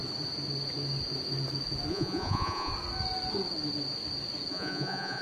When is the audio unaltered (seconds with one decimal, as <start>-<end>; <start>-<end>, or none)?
0.0-1.9; 2.7-4.5